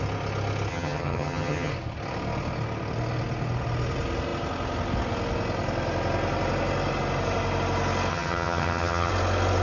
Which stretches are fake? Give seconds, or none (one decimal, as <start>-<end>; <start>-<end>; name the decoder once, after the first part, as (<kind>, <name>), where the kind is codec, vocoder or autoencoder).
0.7-1.7 (vocoder, HiFi-GAN); 8.1-9.1